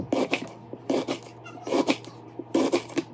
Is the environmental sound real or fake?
real